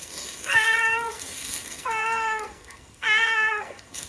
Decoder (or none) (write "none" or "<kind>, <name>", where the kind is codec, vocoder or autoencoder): codec, SNAC